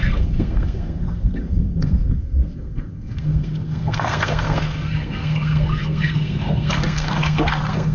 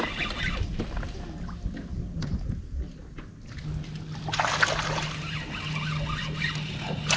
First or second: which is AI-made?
first